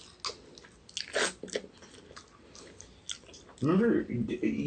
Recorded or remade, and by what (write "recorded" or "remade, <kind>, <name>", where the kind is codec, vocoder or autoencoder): recorded